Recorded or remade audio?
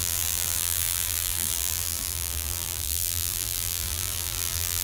remade